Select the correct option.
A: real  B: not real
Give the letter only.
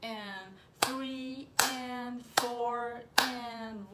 B